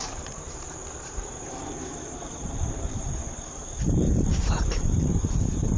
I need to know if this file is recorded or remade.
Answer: remade